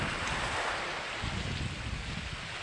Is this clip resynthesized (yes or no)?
no